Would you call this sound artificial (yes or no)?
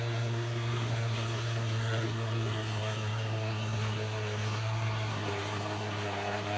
yes